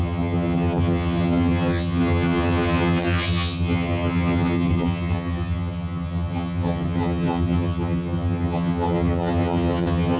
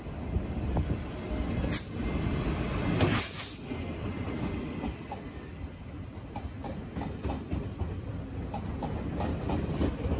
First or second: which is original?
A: second